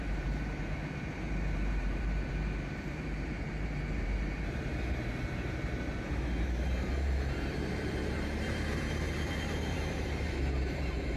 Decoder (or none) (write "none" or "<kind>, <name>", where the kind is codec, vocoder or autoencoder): vocoder, BigVGAN v2